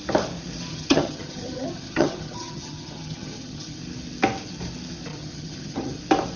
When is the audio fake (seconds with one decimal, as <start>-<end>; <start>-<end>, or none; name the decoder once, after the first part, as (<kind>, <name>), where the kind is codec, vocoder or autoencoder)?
0.7-3.8 (vocoder, HiFi-GAN); 5.1-6.0